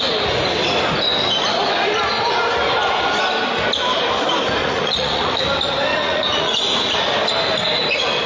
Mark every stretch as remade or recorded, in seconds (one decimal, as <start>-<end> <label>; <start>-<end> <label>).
0.0-4.6 recorded; 4.6-5.4 remade; 5.4-5.9 recorded; 5.9-6.9 remade; 6.9-8.3 recorded